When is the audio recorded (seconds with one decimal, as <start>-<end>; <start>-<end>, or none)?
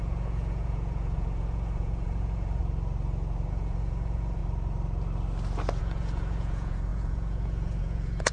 2.6-3.5; 4.4-5.8